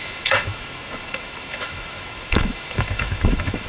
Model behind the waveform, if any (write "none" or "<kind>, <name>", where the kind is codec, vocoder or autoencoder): autoencoder, DAC-VAE